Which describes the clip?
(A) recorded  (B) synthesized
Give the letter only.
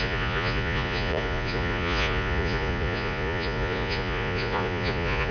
B